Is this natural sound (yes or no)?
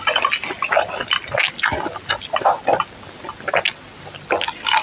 yes